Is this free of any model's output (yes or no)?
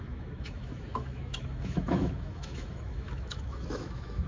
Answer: no